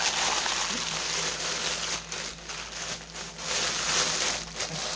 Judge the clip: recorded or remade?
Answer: recorded